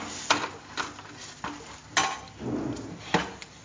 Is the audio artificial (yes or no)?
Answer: no